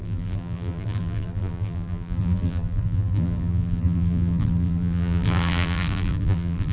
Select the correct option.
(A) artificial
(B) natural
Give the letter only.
A